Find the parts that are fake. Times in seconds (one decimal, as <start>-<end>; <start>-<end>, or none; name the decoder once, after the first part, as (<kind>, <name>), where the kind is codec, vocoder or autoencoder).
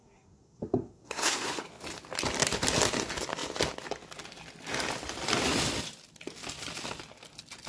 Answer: 0.0-1.6 (codec, SNAC)